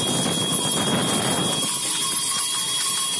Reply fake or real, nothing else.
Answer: real